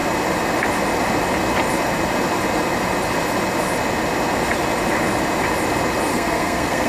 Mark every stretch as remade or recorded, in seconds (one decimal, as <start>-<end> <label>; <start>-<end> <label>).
0.0-6.1 recorded; 6.1-6.9 remade